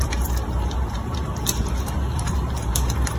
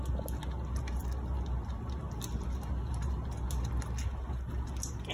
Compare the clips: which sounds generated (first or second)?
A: first